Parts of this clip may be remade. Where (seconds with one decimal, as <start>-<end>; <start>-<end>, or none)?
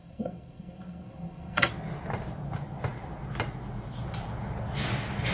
0.0-1.7